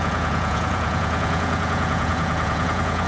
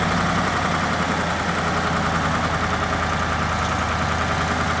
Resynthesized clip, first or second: first